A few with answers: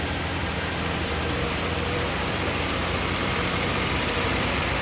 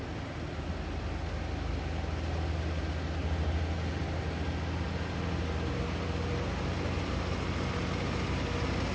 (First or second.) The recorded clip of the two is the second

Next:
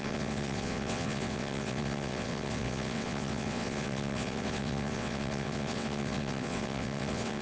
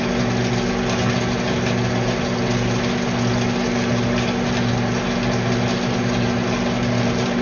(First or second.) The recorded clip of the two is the second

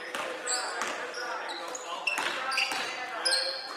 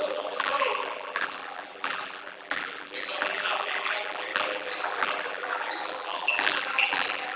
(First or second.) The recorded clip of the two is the first